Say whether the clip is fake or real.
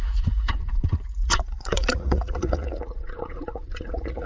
fake